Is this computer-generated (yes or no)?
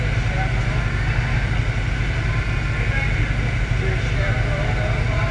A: no